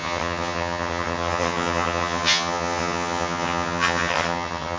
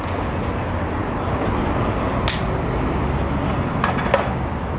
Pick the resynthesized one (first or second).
first